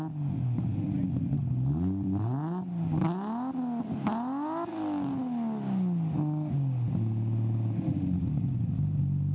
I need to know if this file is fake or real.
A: real